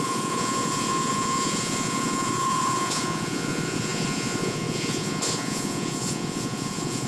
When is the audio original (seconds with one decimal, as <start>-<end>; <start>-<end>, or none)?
none